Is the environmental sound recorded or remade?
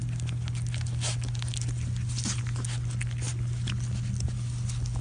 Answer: recorded